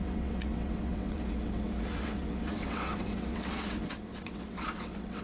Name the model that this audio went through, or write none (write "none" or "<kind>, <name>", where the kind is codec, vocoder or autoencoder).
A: vocoder, WaveNeXt